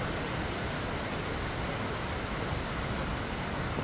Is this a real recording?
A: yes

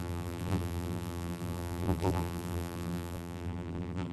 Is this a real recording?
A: no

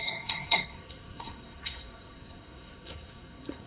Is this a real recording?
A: no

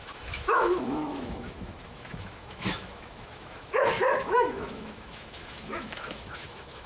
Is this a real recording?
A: no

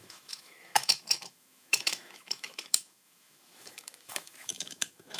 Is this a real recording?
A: no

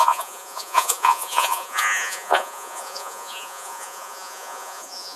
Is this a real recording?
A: no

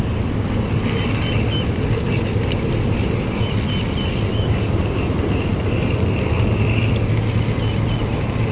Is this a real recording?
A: yes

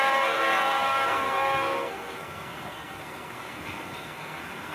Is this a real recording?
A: no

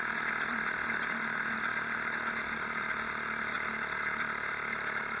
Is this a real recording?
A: yes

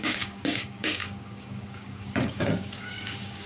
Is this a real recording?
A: no